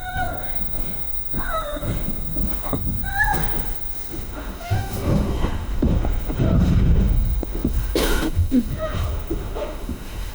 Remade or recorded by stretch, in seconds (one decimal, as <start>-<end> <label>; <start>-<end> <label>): 0.0-10.3 remade